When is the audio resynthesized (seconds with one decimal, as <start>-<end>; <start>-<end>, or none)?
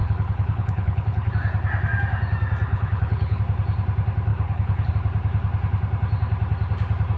0.0-1.3; 2.7-3.4; 4.3-4.9